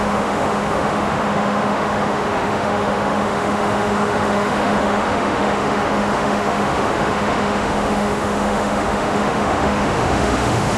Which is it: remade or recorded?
remade